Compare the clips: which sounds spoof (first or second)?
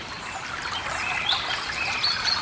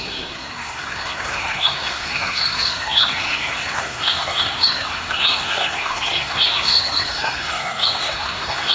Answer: second